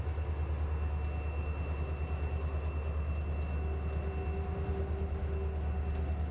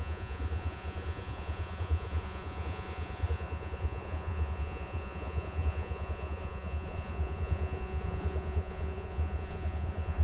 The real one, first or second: first